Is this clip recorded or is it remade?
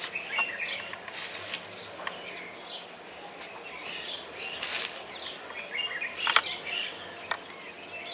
recorded